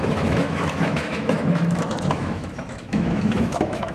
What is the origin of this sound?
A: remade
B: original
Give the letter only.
A